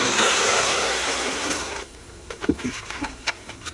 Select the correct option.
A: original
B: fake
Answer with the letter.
B